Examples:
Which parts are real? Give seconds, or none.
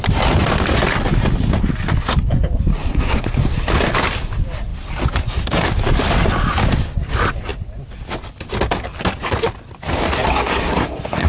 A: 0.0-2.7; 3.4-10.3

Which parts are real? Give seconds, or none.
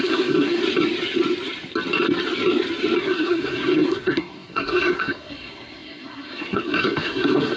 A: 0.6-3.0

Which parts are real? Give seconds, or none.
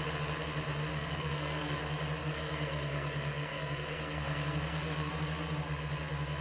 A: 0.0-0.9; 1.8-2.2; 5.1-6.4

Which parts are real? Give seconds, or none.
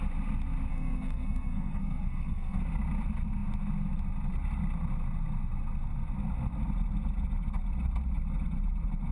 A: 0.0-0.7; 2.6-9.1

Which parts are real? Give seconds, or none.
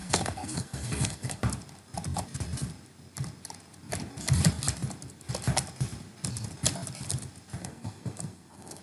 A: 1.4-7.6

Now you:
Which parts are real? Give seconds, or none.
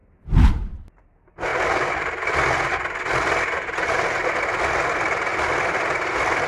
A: 0.0-6.5